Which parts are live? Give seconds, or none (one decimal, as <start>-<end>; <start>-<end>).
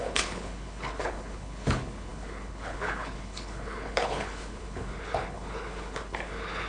none